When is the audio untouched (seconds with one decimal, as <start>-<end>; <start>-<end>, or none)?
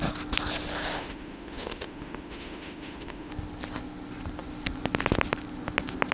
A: 0.0-1.0; 3.3-6.1